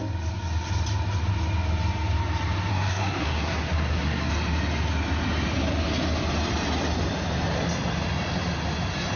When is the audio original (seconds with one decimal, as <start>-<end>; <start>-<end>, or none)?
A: 0.0-2.7; 4.3-9.2